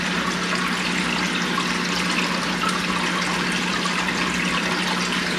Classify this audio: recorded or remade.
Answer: recorded